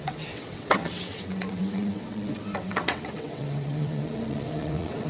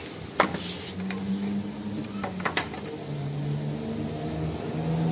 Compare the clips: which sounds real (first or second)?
second